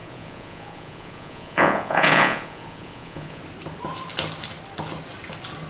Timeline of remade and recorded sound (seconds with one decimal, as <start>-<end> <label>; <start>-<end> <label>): 0.0-3.4 remade; 3.4-5.7 recorded